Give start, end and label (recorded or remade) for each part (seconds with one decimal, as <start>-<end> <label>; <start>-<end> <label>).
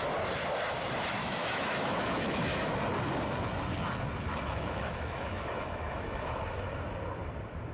0.0-1.2 recorded; 1.2-2.7 remade; 2.7-4.3 recorded; 4.3-6.4 remade; 6.4-7.7 recorded